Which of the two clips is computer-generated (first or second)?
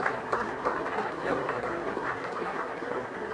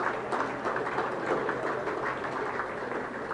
first